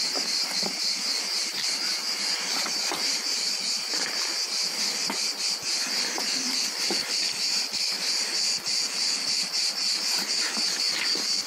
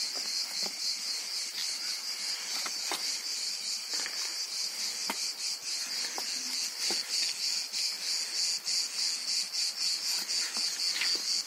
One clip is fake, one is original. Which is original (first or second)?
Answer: second